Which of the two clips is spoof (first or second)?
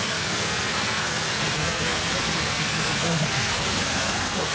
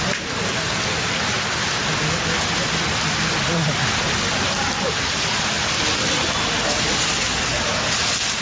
first